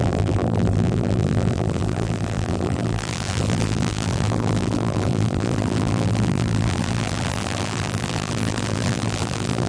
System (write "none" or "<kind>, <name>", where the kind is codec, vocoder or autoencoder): vocoder, BigVGAN v2